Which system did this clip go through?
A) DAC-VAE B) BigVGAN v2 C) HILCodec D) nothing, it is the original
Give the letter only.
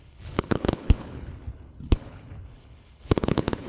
C